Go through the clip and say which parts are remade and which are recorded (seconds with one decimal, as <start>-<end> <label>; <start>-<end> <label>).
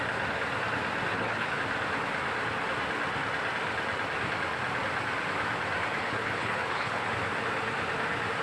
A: 0.0-1.1 recorded; 1.1-1.6 remade; 1.6-6.0 recorded; 6.0-7.1 remade; 7.1-8.4 recorded